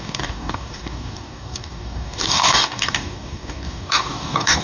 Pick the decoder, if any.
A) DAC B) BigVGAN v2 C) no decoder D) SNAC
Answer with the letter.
A